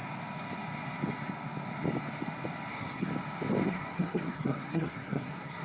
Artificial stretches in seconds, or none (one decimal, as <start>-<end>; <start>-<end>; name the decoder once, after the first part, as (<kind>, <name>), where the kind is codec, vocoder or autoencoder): 2.7-3.1 (codec, SNAC); 3.7-5.6

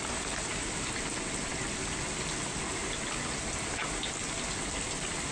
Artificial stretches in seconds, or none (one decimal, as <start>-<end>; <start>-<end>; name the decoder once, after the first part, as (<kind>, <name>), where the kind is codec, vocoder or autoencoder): none

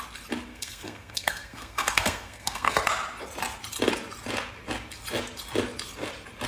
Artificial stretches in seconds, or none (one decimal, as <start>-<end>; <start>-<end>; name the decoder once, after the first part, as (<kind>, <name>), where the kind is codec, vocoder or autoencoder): 0.5-2.7 (codec, SNAC)

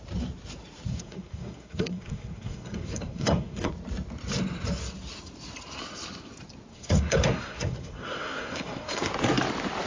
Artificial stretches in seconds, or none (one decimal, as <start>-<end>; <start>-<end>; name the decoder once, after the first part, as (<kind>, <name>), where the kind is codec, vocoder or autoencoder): 0.9-3.7 (codec, SNAC); 6.7-9.1

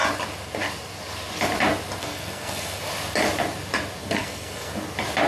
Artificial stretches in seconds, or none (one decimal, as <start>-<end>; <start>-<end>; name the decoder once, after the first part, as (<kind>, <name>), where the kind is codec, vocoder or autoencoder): 2.0-2.8 (codec, SNAC); 4.0-4.7